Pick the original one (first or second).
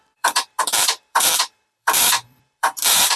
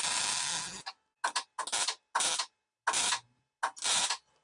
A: second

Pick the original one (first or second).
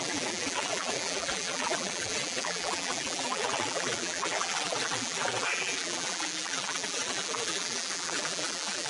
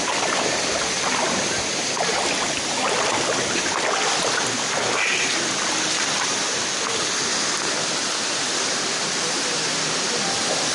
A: second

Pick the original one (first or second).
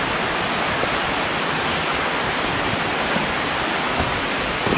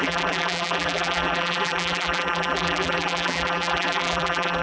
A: first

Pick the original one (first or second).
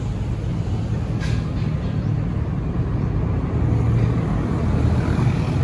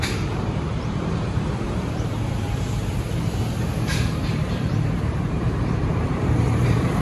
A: first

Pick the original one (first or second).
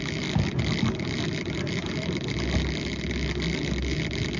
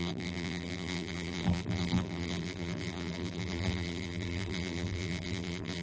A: first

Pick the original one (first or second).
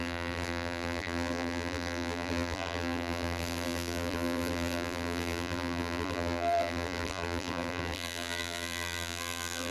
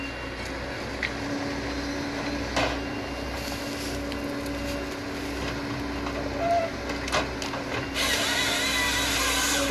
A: second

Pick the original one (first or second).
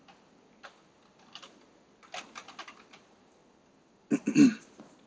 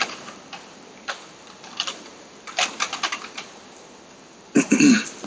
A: first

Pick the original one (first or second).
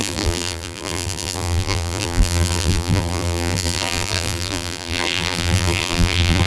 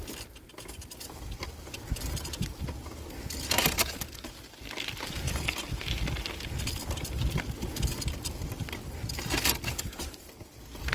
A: second